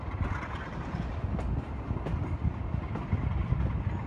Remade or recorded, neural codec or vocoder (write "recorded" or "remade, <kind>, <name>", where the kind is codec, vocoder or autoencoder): recorded